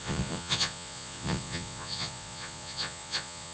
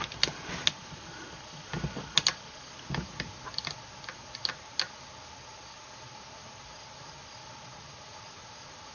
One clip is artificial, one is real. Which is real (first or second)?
second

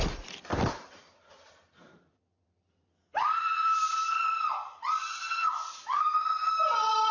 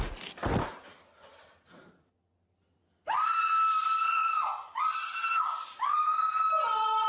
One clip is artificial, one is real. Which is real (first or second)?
second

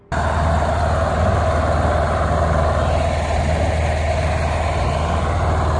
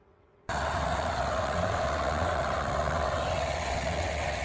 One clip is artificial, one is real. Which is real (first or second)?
first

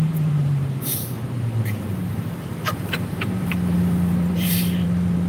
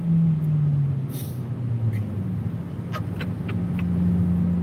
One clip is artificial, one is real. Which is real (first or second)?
second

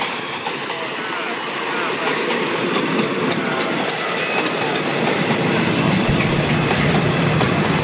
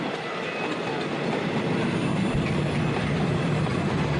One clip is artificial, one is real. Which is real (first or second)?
second